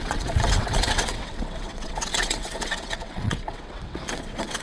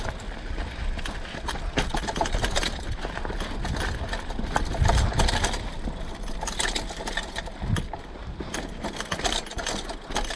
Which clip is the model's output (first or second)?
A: first